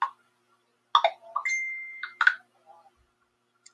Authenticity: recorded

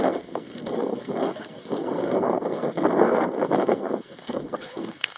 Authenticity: remade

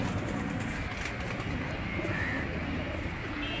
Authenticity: recorded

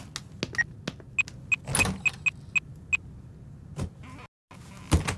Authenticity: recorded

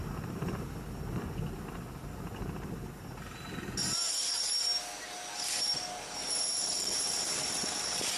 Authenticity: recorded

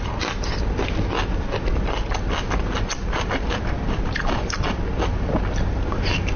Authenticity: recorded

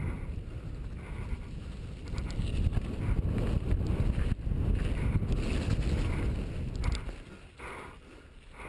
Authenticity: recorded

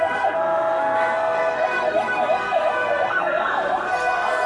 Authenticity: remade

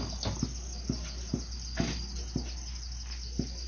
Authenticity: recorded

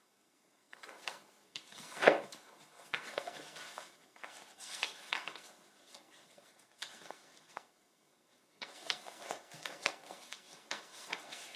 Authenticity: remade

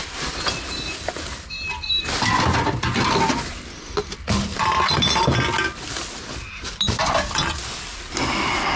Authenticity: recorded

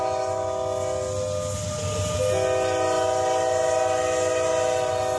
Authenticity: recorded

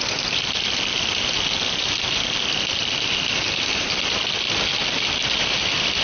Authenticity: recorded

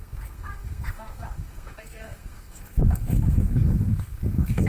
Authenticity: remade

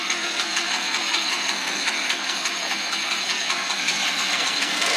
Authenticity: remade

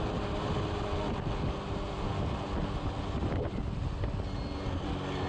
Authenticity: recorded